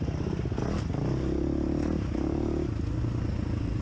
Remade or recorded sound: recorded